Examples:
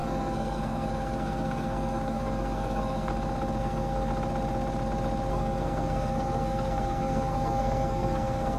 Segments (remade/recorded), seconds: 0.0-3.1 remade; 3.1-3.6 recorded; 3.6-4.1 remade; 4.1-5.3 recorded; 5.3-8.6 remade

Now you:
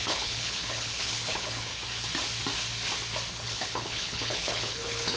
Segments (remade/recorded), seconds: 0.0-1.7 remade; 1.7-3.3 recorded; 3.3-5.2 remade

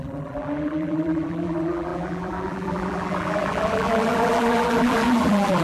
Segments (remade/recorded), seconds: 0.0-5.6 remade

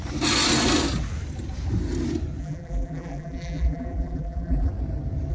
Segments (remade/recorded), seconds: 0.0-2.4 recorded; 2.4-4.7 remade; 4.7-5.3 recorded

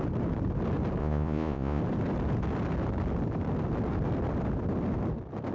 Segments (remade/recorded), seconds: 0.0-1.0 recorded; 1.0-1.8 remade; 1.8-5.5 recorded